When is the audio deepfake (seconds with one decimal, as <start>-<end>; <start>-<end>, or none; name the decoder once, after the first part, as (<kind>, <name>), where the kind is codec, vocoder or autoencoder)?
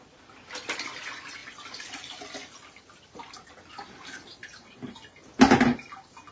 1.4-3.9 (vocoder, BigVGAN v2)